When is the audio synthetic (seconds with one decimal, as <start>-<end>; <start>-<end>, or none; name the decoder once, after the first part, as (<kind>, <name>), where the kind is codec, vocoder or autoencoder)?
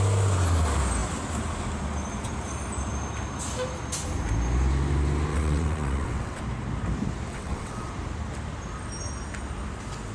5.3-6.4 (vocoder, WaveNeXt); 7.3-7.9